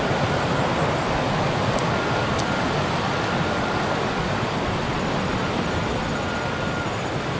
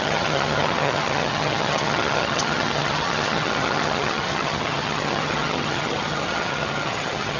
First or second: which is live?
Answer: first